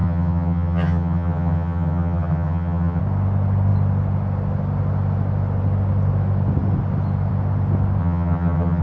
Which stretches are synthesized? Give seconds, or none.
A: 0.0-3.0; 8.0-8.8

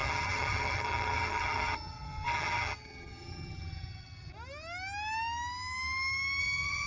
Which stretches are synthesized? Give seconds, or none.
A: 0.0-4.3; 6.4-6.9

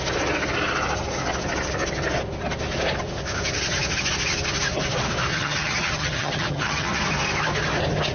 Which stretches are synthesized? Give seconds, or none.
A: 5.3-7.0

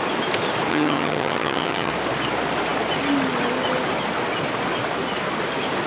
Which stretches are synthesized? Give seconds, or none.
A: 0.7-1.9

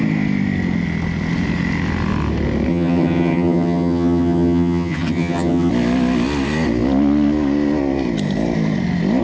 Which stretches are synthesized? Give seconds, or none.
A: 2.7-5.7

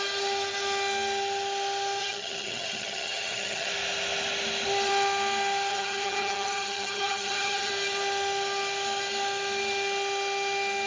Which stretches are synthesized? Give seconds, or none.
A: 2.0-3.7; 5.7-7.7

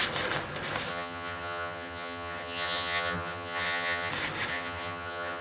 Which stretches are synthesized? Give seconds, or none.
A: 0.9-4.1; 4.5-5.4